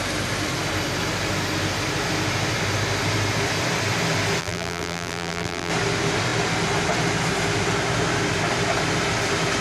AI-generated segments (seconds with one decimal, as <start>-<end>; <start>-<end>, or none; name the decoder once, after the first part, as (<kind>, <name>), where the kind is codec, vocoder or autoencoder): 4.4-5.7 (vocoder, BigVGAN v2)